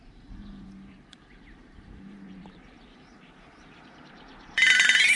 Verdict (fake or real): fake